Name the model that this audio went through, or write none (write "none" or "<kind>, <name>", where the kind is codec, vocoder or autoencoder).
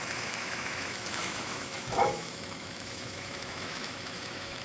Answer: autoencoder, DAC-VAE